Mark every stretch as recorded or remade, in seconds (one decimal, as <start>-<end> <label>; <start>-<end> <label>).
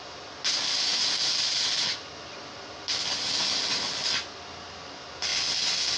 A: 0.0-6.0 recorded